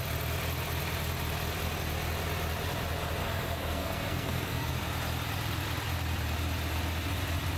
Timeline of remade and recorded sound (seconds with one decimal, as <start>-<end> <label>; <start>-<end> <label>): 0.0-3.2 recorded; 3.2-4.7 remade; 4.7-7.6 recorded

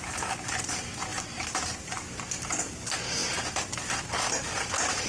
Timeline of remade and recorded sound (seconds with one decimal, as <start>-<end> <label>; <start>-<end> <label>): 0.0-1.1 recorded; 1.1-2.7 remade; 2.7-5.1 recorded

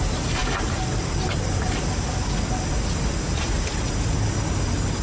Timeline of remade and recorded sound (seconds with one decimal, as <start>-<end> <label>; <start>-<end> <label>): 0.0-5.0 recorded

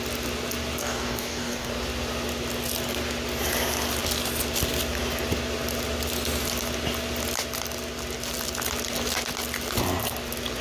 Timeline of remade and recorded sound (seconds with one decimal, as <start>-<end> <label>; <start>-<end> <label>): 0.0-0.8 recorded; 0.8-1.7 remade; 1.7-10.6 recorded

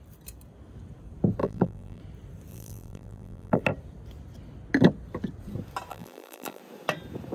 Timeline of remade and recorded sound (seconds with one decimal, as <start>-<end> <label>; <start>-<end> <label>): 0.0-1.4 recorded; 1.4-2.0 remade; 2.0-2.5 recorded; 2.5-3.6 remade; 3.6-5.9 recorded; 5.9-6.6 remade; 6.6-7.3 recorded